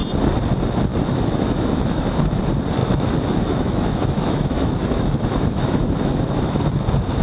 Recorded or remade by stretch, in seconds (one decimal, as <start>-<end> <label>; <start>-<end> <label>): 0.0-0.9 recorded; 0.9-2.4 remade; 2.4-2.8 recorded; 2.8-6.6 remade; 6.6-7.2 recorded